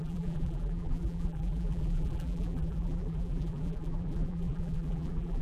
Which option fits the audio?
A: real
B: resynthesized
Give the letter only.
B